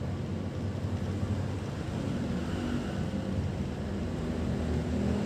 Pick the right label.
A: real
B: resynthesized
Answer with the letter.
A